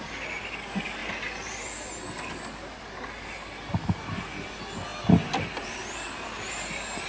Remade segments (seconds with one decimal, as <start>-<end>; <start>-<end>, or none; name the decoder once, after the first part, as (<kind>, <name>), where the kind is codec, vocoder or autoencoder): none